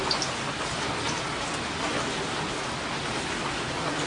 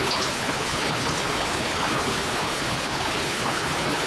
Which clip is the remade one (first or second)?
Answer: second